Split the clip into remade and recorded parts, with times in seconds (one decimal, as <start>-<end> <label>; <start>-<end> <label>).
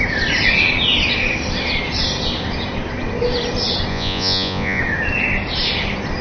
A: 0.0-3.9 recorded; 3.9-4.8 remade; 4.8-6.2 recorded